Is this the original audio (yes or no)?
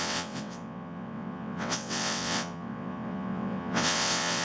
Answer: no